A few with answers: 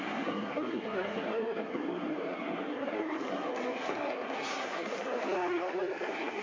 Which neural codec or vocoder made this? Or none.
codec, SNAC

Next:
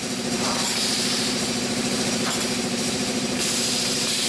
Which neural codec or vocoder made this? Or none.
vocoder, BigVGAN v2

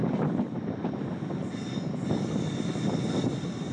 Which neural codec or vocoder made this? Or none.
none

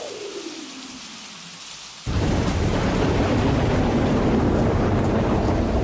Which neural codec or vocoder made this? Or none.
none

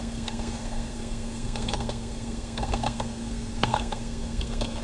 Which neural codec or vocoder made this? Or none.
codec, SNAC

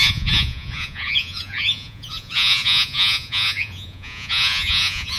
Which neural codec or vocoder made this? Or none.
vocoder, Vocos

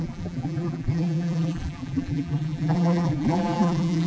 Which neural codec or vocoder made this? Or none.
vocoder, BigVGAN v2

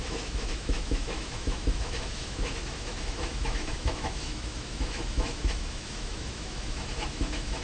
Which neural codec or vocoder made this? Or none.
autoencoder, DAC-VAE